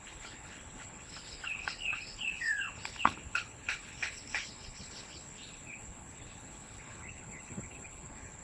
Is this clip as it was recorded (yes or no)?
no